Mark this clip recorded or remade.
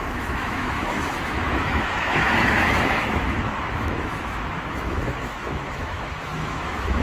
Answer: remade